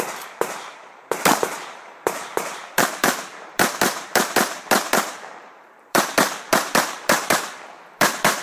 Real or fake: fake